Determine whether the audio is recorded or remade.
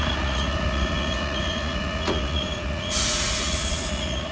remade